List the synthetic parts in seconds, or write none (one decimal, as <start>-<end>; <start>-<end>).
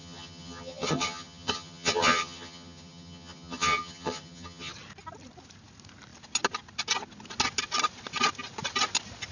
0.0-4.7